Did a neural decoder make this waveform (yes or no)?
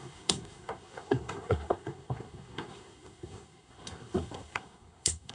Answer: yes